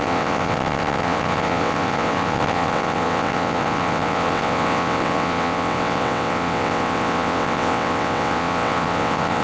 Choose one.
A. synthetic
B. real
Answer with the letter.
A